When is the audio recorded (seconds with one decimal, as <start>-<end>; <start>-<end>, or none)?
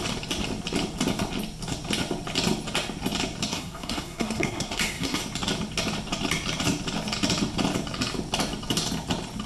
0.0-3.5; 5.2-9.5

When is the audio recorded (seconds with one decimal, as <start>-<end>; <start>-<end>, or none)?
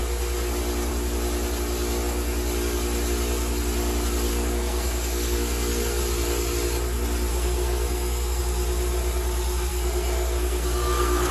0.0-4.3; 6.0-7.3; 8.4-9.7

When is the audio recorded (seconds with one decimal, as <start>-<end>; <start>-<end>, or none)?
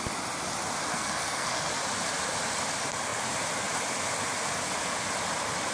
0.0-0.9; 1.7-5.7